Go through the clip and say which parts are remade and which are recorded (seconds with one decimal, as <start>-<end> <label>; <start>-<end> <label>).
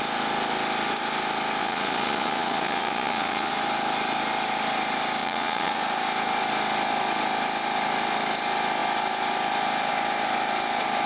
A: 0.0-1.6 recorded; 1.6-3.5 remade; 3.5-5.2 recorded; 5.2-5.8 remade; 5.8-11.1 recorded